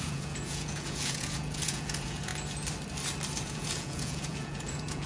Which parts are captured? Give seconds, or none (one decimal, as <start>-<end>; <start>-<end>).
2.3-3.4